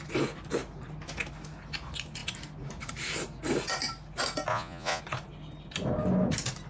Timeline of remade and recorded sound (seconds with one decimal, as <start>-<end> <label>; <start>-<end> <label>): 0.0-4.5 recorded; 4.5-5.0 remade; 5.0-6.7 recorded